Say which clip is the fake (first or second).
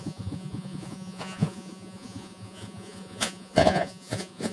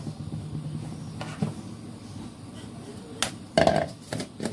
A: first